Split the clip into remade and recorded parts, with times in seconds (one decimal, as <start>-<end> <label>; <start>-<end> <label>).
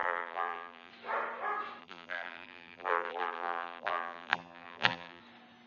0.0-0.9 remade; 0.9-1.8 recorded; 1.8-5.2 remade; 5.2-5.7 recorded